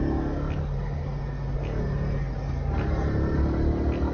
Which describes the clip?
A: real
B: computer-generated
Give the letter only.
A